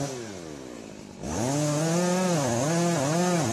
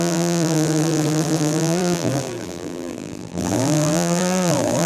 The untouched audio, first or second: first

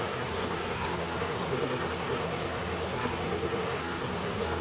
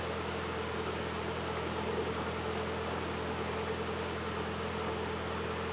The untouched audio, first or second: second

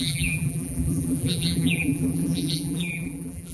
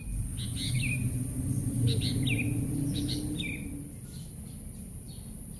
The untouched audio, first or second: second